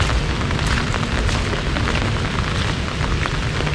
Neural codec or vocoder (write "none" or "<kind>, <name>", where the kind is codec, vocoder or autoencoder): none